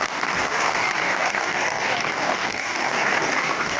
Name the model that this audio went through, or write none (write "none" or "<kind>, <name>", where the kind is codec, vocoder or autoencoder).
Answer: codec, DAC